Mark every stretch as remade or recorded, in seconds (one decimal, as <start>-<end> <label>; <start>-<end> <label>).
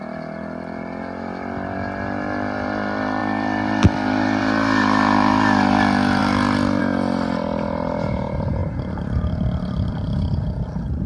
0.0-3.2 recorded; 3.2-4.4 remade; 4.4-8.6 recorded; 8.6-9.9 remade; 9.9-11.1 recorded